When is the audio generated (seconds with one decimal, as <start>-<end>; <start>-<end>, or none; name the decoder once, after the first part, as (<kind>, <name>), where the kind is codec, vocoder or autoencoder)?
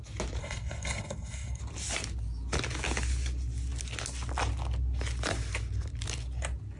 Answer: 0.4-1.6 (codec, SNAC)